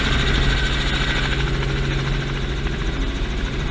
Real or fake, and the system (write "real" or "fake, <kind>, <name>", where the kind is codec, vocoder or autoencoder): real